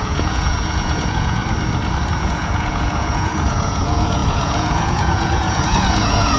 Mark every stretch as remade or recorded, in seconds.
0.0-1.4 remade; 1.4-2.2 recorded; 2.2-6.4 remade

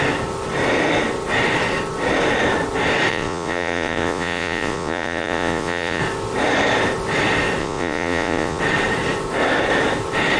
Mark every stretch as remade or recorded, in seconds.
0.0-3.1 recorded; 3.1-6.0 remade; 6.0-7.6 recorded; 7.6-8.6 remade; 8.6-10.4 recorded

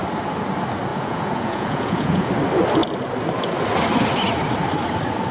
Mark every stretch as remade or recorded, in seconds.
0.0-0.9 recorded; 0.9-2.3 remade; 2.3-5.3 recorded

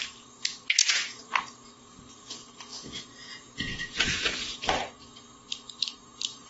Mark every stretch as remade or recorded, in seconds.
0.0-2.7 recorded; 2.7-4.6 remade; 4.6-6.5 recorded